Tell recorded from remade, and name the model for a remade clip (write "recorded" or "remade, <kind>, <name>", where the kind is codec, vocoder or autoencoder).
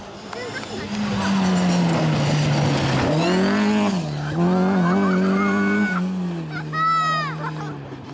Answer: recorded